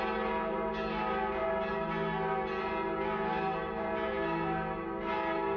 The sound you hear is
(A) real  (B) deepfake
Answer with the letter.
A